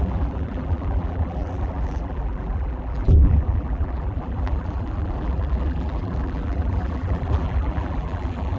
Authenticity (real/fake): fake